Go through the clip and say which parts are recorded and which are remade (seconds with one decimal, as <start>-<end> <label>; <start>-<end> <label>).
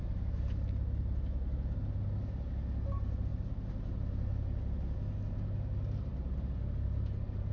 0.0-7.5 recorded